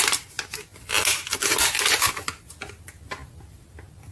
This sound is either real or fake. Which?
real